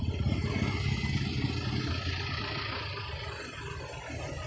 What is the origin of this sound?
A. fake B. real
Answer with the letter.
B